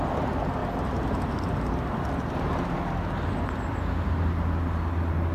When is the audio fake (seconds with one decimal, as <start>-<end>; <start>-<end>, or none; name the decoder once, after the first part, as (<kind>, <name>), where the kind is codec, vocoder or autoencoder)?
none